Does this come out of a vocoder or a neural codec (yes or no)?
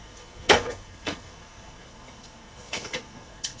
yes